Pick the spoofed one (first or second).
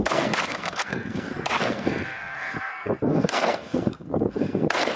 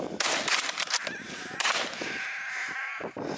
first